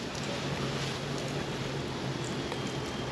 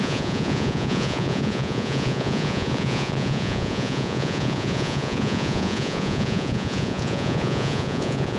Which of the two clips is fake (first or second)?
second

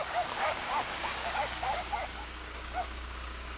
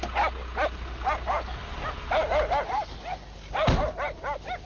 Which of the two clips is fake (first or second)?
first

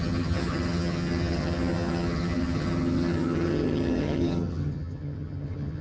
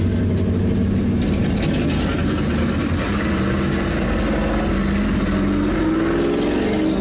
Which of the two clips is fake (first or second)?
first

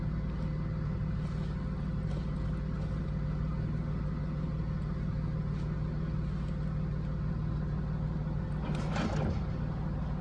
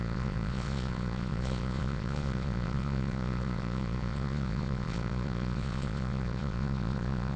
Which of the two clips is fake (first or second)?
second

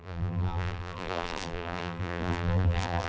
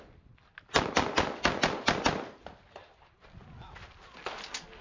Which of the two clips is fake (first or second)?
first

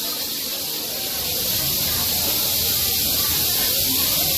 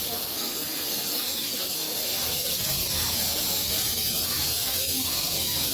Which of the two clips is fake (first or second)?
second